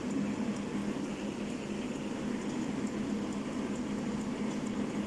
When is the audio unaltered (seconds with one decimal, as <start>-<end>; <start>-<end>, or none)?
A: 0.0-5.1